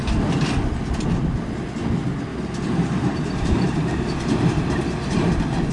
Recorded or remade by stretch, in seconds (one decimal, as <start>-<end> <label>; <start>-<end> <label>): 0.0-2.3 recorded; 2.3-5.7 remade